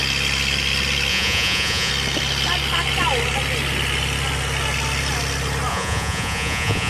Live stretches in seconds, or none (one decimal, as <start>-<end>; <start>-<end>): 0.0-1.1; 1.9-5.7